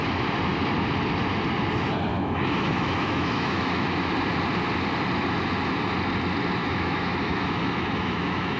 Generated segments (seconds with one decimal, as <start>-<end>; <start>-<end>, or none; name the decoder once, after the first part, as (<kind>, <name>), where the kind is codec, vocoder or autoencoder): 2.1-4.1 (autoencoder, DAC-VAE); 6.6-8.6